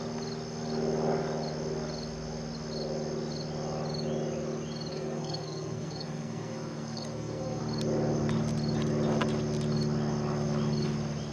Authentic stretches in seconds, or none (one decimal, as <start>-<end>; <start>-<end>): 0.0-4.9; 7.6-11.3